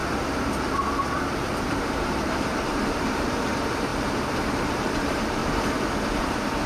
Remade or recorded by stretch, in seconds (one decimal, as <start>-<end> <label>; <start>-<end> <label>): 0.0-1.6 recorded; 1.6-3.9 remade; 3.9-4.5 recorded; 4.5-5.4 remade; 5.4-6.2 recorded; 6.2-6.7 remade